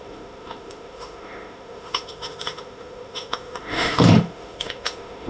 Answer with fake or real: fake